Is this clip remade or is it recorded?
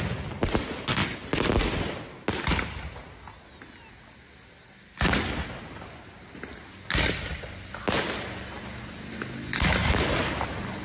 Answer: recorded